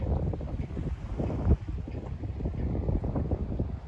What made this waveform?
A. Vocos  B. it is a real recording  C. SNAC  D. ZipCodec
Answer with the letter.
B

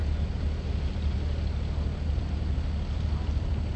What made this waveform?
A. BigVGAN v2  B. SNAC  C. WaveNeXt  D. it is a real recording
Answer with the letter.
D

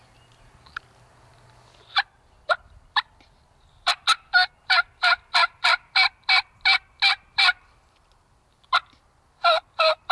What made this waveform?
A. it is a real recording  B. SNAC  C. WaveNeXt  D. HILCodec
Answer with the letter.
A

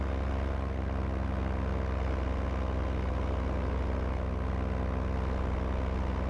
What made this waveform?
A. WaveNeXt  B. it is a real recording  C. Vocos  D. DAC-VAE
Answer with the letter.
B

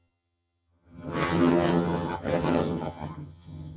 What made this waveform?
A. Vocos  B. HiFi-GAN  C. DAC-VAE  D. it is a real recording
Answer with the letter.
B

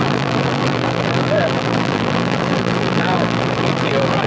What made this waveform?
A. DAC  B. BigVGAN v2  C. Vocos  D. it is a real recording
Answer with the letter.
B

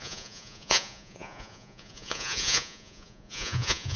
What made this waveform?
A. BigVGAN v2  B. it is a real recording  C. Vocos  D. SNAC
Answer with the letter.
C